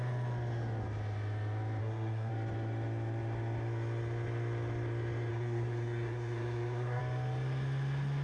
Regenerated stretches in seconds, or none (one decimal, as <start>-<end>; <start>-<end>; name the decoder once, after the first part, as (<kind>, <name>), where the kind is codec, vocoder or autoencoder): 1.8-2.3 (codec, SNAC); 5.3-7.0